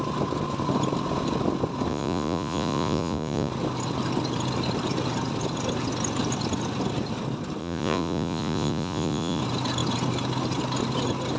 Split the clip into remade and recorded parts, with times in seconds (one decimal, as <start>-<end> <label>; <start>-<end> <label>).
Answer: 0.0-1.9 recorded; 1.9-3.5 remade; 3.5-7.6 recorded; 7.6-9.4 remade; 9.4-11.4 recorded